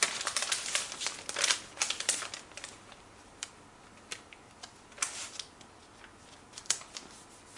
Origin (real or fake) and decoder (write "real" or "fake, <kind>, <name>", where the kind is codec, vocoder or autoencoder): real